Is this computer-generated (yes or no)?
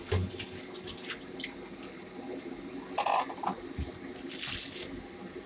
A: no